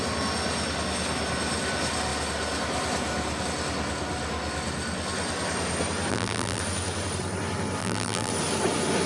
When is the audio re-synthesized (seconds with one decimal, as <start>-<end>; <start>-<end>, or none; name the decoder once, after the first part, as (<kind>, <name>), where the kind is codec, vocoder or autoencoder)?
6.1-6.6 (vocoder, BigVGAN v2); 7.8-8.3